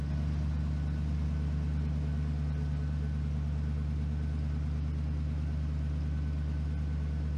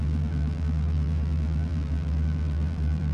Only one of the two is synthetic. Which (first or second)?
second